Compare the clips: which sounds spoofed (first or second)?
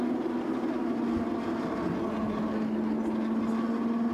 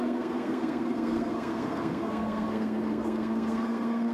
second